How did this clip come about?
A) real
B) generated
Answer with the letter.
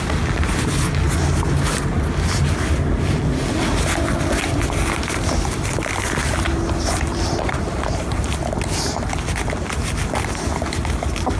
A